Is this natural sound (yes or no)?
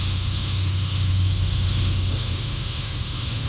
no